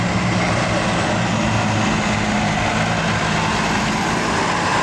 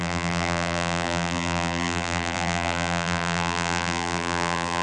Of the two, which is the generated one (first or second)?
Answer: second